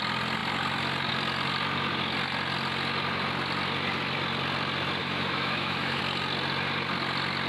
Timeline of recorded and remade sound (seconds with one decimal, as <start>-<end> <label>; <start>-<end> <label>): 0.0-5.0 recorded; 5.0-6.0 remade; 6.0-7.5 recorded